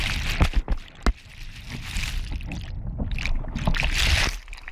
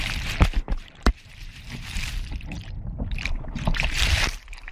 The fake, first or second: second